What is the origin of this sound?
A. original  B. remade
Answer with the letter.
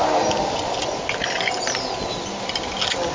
A